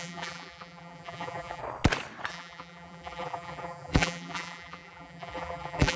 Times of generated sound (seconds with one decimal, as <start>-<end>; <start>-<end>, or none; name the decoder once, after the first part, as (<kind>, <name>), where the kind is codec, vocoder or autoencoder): 0.0-1.6 (vocoder, BigVGAN v2); 2.3-6.0